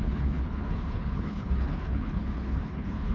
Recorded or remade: remade